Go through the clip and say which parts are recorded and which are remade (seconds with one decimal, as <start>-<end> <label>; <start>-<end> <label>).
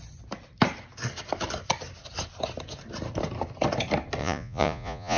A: 0.0-4.2 recorded; 4.2-5.2 remade